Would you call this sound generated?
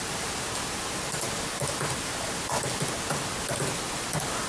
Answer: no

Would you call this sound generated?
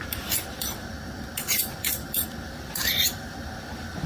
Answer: yes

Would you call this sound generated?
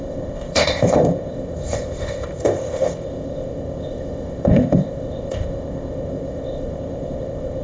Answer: yes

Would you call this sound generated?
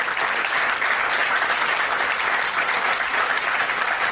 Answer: no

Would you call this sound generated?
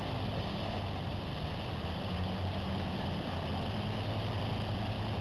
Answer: no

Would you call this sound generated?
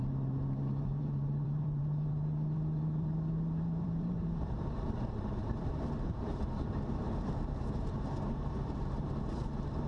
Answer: yes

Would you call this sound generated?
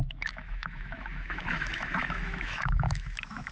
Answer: yes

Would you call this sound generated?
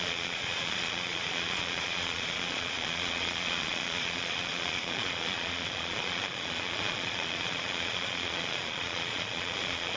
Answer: yes